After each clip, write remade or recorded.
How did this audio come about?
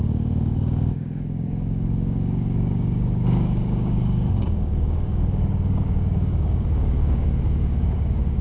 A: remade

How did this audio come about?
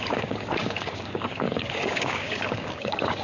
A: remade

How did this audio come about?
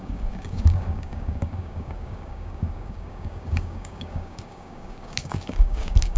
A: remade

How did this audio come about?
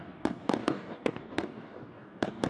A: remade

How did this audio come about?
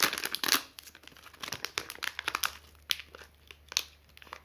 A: recorded